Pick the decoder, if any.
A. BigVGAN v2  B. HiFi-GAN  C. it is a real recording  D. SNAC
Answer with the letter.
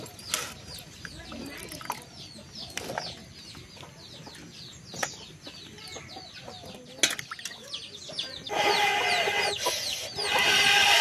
C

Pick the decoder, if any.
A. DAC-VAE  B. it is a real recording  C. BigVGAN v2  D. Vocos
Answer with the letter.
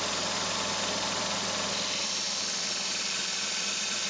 C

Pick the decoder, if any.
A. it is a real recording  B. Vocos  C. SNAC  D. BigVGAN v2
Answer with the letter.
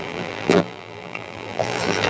D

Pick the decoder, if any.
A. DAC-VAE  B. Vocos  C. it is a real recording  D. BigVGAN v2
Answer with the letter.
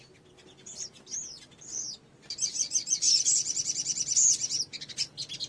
C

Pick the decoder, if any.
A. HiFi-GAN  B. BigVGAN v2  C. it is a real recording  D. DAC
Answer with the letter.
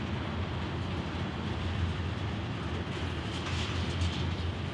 C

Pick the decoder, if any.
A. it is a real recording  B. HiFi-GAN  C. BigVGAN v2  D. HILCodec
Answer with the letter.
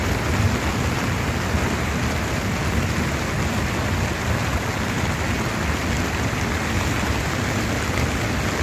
A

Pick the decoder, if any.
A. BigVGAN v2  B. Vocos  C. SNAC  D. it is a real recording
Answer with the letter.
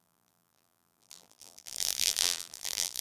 A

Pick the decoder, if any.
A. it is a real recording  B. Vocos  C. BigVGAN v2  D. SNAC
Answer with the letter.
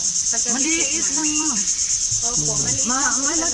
C